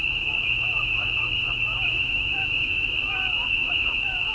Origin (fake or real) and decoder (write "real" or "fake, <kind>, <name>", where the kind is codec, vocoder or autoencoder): fake, autoencoder, DAC-VAE